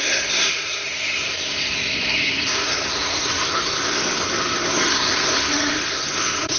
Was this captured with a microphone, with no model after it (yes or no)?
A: no